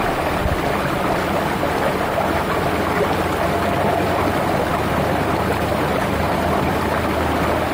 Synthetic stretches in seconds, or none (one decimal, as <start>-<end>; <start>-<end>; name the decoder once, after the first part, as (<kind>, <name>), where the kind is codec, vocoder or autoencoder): 4.7-6.8 (vocoder, BigVGAN v2)